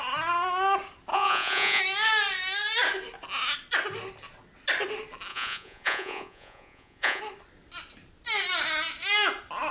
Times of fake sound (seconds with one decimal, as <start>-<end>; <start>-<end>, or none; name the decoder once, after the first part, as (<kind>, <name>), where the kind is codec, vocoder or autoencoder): 1.1-1.8 (vocoder, Vocos); 5.3-7.2